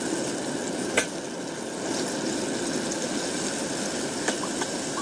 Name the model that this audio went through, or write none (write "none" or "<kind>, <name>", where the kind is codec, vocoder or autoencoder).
none